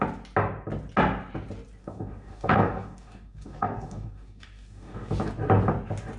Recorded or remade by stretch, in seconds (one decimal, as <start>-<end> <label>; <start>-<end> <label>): 0.0-1.8 recorded; 1.8-5.1 remade; 5.1-6.2 recorded